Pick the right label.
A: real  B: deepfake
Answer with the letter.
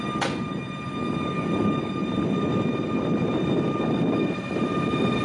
A